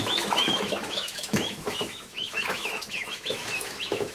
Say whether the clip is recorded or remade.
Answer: remade